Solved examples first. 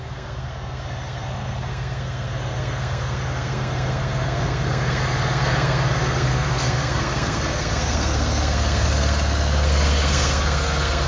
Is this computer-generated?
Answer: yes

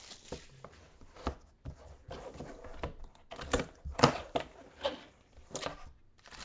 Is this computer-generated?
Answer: no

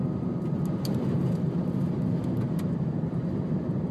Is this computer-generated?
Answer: no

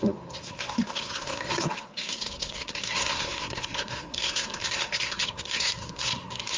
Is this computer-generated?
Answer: yes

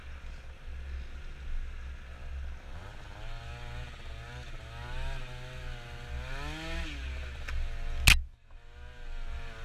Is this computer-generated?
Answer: no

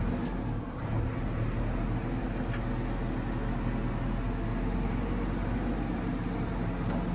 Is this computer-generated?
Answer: no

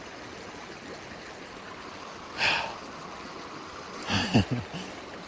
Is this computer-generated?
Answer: no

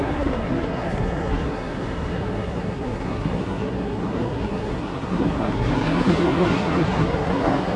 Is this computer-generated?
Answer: yes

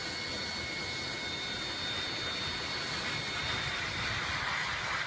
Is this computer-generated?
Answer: no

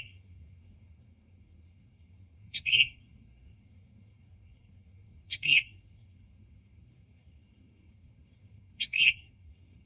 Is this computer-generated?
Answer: yes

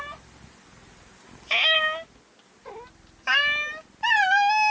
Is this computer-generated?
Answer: no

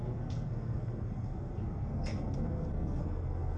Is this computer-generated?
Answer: yes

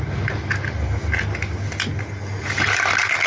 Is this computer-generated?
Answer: no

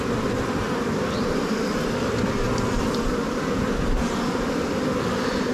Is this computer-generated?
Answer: no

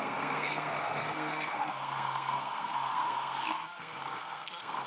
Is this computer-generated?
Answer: yes